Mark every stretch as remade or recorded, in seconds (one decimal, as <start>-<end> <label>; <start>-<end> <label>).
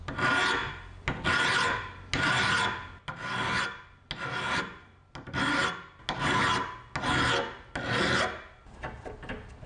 0.0-9.7 recorded